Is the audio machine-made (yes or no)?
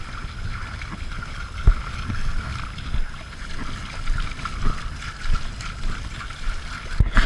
no